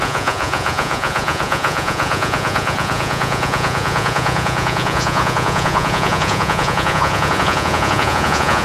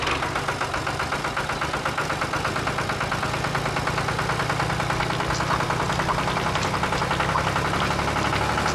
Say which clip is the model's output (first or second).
first